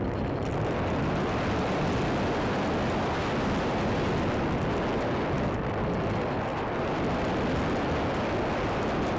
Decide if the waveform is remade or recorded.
recorded